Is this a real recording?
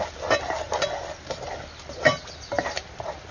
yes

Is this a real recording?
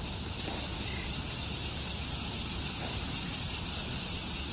yes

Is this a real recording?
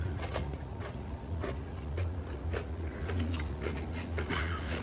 no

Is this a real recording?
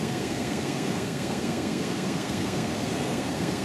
no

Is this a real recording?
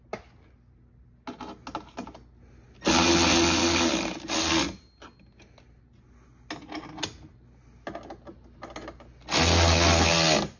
yes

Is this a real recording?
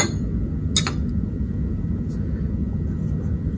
yes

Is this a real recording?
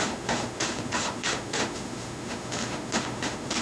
no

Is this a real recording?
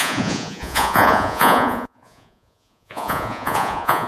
no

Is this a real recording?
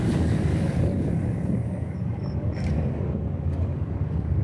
no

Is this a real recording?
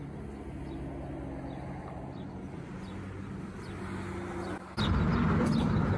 yes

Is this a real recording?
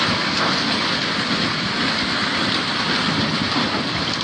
no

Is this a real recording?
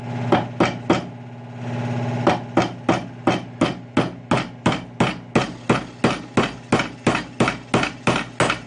yes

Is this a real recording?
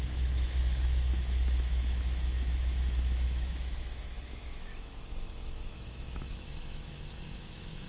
no